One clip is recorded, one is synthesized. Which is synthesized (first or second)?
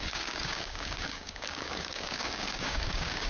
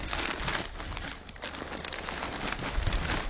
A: first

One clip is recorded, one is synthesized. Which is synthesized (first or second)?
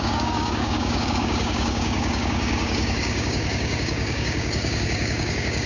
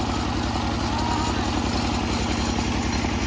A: first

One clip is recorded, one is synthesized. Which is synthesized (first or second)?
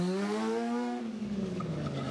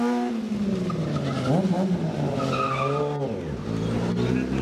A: first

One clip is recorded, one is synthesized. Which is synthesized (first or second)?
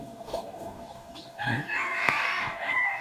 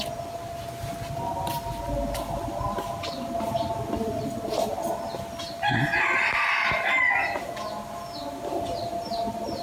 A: first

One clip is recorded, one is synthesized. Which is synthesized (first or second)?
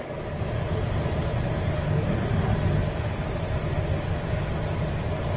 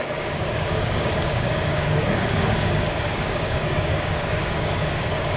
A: second